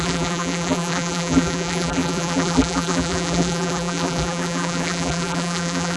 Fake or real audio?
fake